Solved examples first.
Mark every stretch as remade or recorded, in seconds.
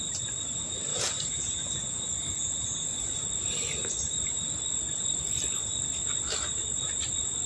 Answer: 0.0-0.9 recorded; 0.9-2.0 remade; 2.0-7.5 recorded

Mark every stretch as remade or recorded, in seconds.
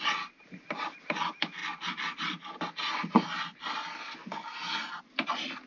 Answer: 0.0-5.7 recorded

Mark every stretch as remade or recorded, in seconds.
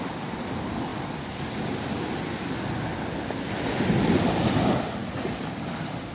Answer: 0.0-6.1 recorded